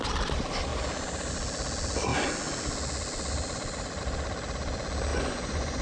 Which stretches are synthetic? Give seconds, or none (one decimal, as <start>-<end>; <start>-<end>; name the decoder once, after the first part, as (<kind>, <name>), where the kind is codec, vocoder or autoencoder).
5.1-5.8 (vocoder, Vocos)